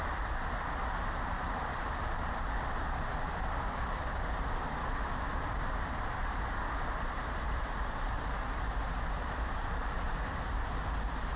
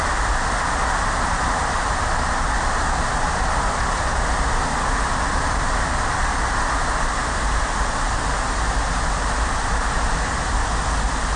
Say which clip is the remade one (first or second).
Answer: first